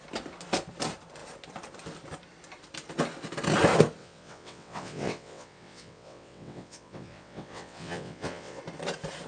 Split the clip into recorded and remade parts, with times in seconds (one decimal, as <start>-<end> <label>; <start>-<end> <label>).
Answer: 0.0-4.0 recorded; 4.0-8.6 remade; 8.6-9.3 recorded